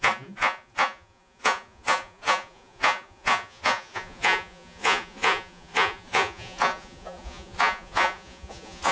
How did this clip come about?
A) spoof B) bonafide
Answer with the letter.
A